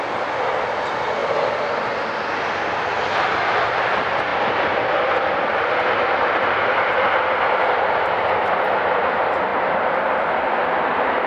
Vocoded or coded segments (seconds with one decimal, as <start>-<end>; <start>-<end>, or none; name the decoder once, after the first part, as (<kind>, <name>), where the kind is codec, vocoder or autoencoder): 1.2-1.8 (vocoder, BigVGAN v2); 9.5-10.2